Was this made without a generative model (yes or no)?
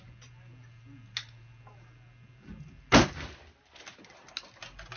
yes